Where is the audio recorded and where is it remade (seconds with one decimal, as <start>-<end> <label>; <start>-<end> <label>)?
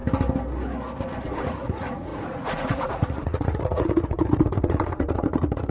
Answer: 0.0-1.4 recorded; 1.4-5.7 remade